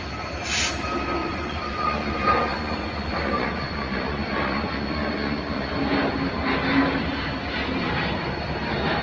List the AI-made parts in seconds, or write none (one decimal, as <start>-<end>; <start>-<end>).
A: 1.2-5.7